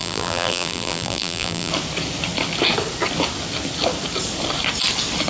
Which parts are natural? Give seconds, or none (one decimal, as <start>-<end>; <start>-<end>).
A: 1.7-5.3